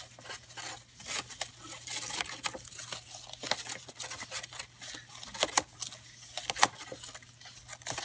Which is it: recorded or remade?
recorded